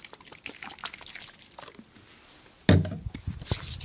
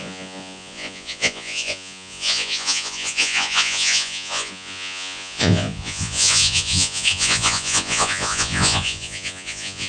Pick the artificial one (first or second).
second